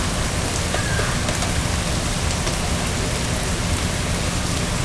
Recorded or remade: recorded